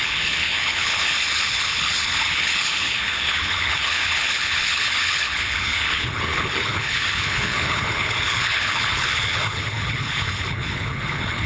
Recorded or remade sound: remade